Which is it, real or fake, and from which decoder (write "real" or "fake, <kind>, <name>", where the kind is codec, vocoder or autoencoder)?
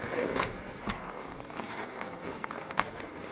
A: fake, codec, SNAC